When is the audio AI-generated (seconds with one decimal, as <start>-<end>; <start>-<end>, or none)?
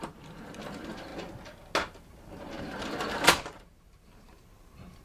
0.0-1.1; 2.3-5.0